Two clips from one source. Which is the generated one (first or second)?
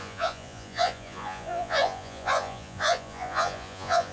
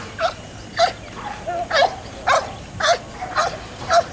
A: first